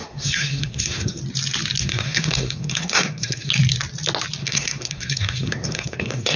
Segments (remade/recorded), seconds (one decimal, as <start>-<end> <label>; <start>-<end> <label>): 0.0-1.2 remade; 1.2-1.8 recorded; 1.8-3.5 remade; 3.5-4.4 recorded; 4.4-6.4 remade